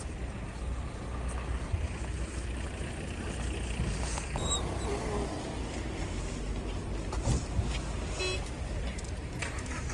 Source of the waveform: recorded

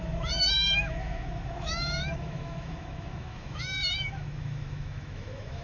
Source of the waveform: remade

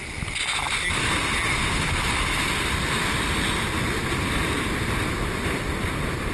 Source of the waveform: recorded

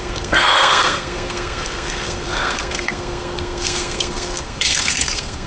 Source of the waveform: remade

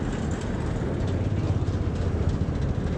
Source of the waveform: recorded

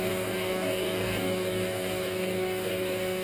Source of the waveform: remade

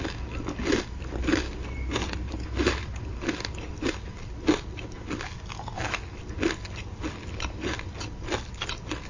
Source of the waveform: recorded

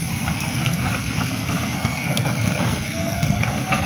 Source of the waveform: remade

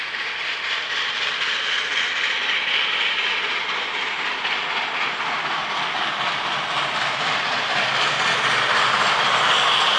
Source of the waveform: recorded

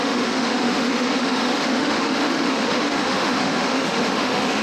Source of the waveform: remade